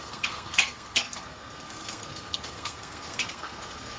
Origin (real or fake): fake